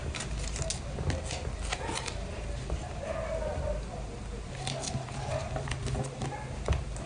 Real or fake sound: real